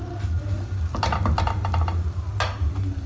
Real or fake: real